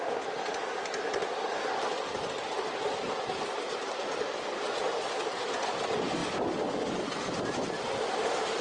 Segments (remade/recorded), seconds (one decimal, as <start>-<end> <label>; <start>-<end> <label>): 0.0-8.6 recorded